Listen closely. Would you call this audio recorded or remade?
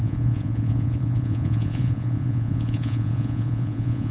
remade